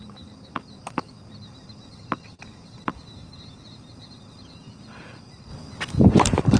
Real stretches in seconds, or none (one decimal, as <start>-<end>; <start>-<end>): 5.5-6.0